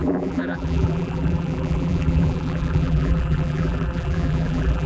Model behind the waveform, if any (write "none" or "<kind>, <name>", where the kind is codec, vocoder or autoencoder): vocoder, BigVGAN v2